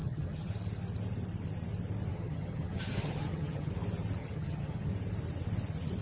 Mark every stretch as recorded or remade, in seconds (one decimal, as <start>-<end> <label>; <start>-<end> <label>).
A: 0.0-0.5 remade; 0.5-2.1 recorded; 2.1-3.7 remade; 3.7-4.2 recorded; 4.2-4.9 remade; 4.9-6.0 recorded